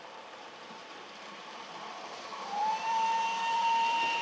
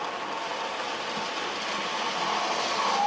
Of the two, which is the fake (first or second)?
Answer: first